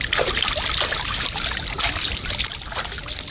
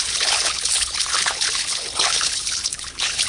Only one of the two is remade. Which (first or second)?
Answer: second